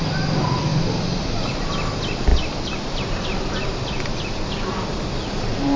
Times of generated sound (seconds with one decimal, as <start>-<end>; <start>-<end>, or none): none